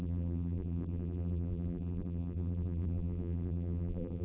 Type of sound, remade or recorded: remade